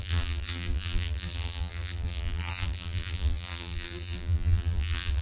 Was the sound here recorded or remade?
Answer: remade